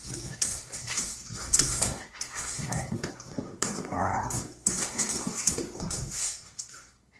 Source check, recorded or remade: remade